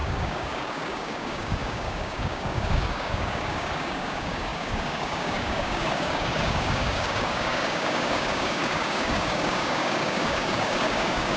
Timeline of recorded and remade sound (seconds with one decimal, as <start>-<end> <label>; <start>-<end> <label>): 0.0-11.4 remade

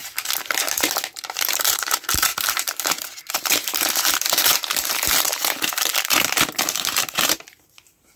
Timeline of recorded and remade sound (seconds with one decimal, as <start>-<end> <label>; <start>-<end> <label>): 0.0-0.6 recorded; 0.6-8.2 remade

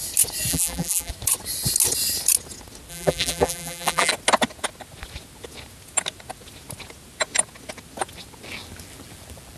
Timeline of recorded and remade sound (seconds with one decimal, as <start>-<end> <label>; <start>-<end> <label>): 0.0-0.5 recorded; 0.5-1.1 remade; 1.1-2.9 recorded; 2.9-4.1 remade; 4.1-9.6 recorded

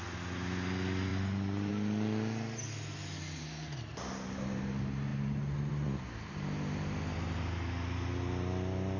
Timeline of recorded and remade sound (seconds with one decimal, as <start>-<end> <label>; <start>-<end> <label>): 0.0-1.1 recorded; 1.1-1.7 remade; 1.7-9.0 recorded

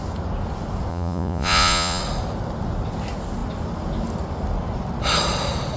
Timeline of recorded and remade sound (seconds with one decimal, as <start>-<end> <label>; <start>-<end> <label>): 0.0-0.9 recorded; 0.9-2.0 remade; 2.0-5.8 recorded

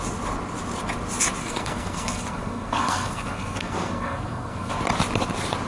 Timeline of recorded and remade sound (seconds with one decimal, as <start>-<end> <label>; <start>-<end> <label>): 0.0-1.4 recorded; 1.4-4.8 remade; 4.8-5.7 recorded

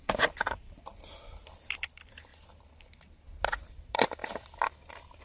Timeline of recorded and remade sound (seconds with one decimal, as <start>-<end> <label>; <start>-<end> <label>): 0.0-0.9 remade; 0.9-1.4 recorded; 1.4-2.3 remade; 2.3-3.6 recorded; 3.6-5.2 remade